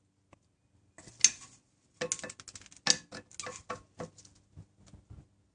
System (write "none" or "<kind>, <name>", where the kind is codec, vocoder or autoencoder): none